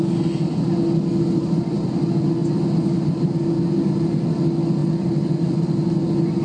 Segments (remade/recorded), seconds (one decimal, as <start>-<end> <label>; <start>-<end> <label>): 0.0-6.4 recorded